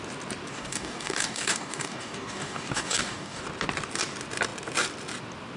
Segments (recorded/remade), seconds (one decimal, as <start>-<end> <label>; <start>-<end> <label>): 0.0-0.5 recorded; 0.5-3.4 remade; 3.4-5.6 recorded